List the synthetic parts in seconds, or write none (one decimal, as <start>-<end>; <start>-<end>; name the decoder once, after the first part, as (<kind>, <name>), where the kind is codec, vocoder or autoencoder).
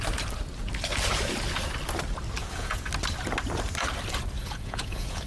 2.4-2.9 (vocoder, Vocos); 4.4-5.3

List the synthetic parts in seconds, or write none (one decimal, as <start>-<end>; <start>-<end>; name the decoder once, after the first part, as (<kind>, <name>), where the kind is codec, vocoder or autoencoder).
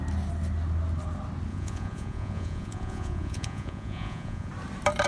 1.5-4.5 (vocoder, Vocos)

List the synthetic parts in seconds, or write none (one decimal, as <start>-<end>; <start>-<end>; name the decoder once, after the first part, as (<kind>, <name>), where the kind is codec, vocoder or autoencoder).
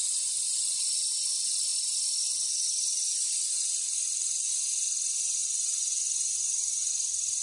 5.4-6.9 (vocoder, Vocos)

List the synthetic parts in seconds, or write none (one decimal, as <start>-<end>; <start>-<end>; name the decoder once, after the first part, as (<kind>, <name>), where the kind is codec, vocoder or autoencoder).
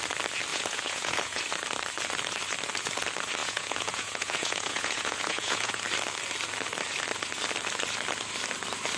0.5-1.4 (vocoder, Vocos); 3.4-5.8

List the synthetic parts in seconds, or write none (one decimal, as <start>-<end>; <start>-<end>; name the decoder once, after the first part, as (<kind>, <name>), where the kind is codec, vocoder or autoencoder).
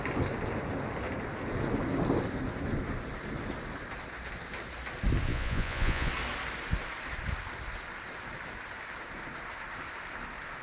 5.3-6.1 (vocoder, Vocos)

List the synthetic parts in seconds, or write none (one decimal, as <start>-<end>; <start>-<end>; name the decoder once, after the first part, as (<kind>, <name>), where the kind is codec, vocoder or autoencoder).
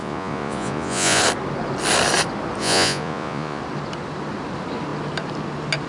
0.0-1.2 (vocoder, Vocos); 2.6-3.6